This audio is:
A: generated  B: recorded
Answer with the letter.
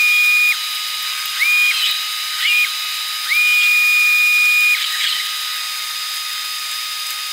B